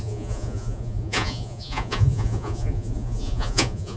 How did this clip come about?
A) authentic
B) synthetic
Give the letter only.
B